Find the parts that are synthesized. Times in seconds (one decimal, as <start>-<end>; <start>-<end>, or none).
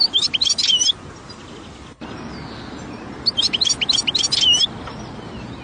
none